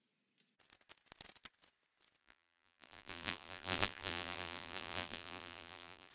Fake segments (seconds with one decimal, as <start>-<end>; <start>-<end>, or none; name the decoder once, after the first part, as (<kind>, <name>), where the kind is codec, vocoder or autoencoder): 2.2-6.1 (vocoder, BigVGAN v2)